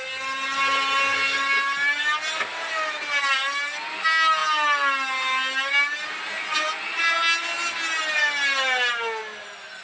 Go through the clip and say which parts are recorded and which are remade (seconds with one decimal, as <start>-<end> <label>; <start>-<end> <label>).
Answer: 0.0-9.8 recorded